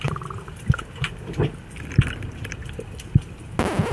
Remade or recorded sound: recorded